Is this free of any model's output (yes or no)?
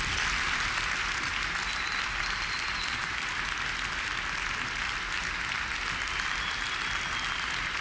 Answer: yes